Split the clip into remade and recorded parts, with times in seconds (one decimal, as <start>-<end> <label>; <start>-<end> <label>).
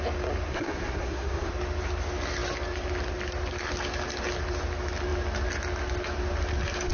0.0-0.5 recorded; 0.5-1.5 remade; 1.5-6.9 recorded